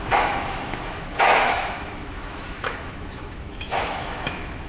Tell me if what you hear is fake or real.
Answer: fake